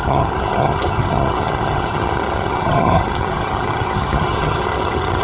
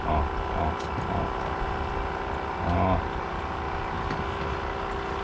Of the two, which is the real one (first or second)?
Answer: second